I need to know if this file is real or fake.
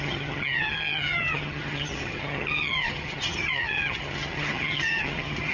fake